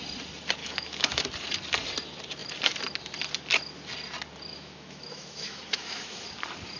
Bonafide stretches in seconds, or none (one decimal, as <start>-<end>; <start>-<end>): 0.0-0.6; 1.3-4.5; 6.3-6.8